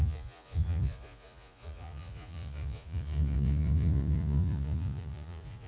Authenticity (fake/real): fake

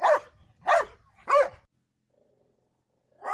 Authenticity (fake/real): real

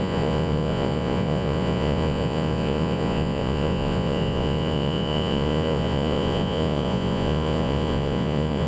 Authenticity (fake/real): fake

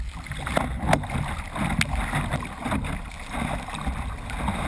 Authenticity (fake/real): real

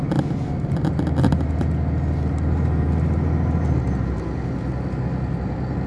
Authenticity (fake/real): real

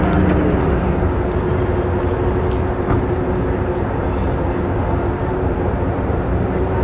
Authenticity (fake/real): real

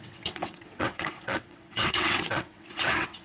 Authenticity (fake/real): fake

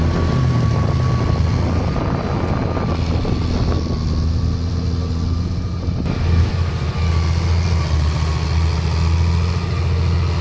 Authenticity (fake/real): real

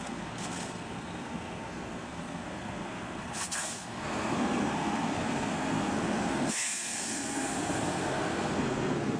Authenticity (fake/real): fake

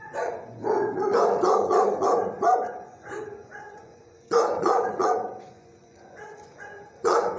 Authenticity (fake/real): fake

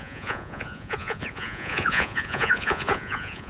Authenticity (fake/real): fake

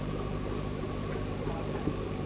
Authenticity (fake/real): real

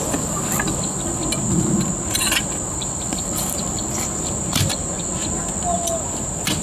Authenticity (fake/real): real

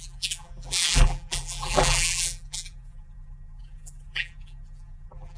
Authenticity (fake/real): fake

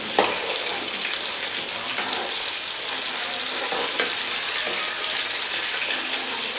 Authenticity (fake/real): real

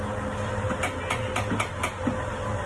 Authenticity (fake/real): real